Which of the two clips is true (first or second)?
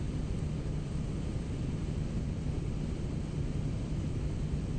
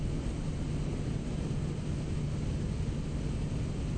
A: second